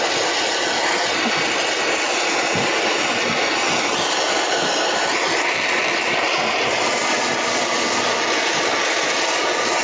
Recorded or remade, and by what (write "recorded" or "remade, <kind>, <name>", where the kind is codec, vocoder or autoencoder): recorded